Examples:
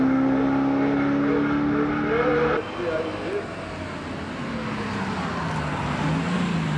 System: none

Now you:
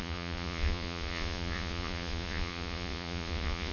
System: vocoder, Vocos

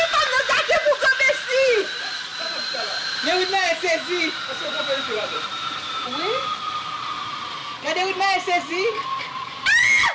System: vocoder, BigVGAN v2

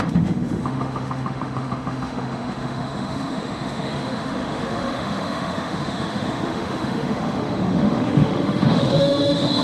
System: autoencoder, DAC-VAE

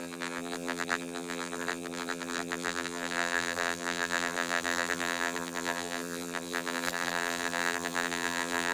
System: vocoder, BigVGAN v2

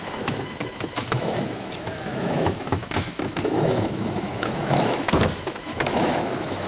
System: autoencoder, DAC-VAE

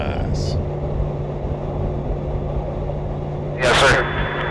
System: none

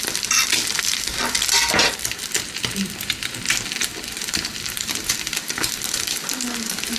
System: vocoder, BigVGAN v2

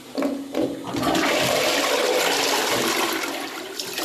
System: vocoder, BigVGAN v2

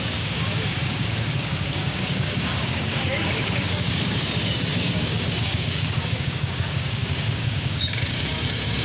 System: codec, DAC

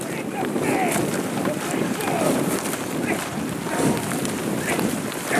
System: vocoder, BigVGAN v2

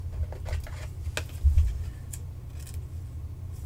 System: none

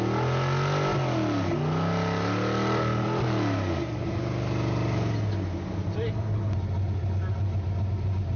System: none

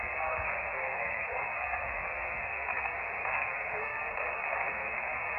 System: codec, SNAC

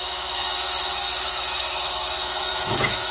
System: autoencoder, DAC-VAE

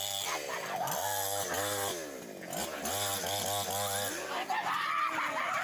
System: none